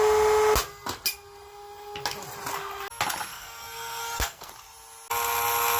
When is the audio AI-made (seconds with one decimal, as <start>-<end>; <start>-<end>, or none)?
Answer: 3.3-4.5